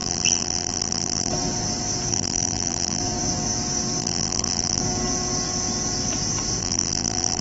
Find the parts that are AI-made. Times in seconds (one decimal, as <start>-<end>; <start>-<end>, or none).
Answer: 0.0-1.3; 2.1-3.0; 4.0-4.8; 6.6-7.4